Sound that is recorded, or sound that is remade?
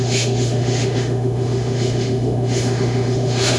remade